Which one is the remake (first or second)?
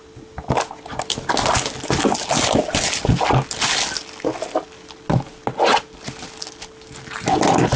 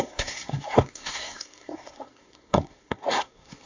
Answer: second